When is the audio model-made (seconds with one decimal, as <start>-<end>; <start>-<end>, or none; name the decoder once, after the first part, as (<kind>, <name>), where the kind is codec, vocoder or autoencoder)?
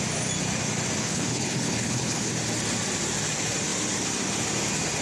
1.0-2.3 (codec, HILCodec)